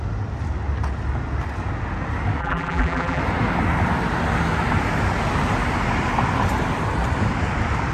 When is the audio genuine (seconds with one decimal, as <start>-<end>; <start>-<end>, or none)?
0.0-2.4; 3.2-7.9